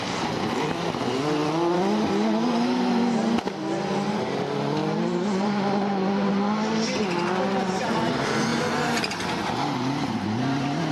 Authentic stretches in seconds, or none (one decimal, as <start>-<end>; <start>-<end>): 0.0-1.4; 2.0-4.8; 6.3-10.9